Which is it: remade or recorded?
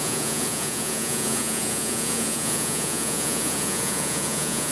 remade